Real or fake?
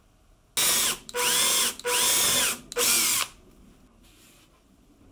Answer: real